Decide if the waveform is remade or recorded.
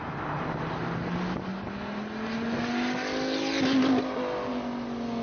recorded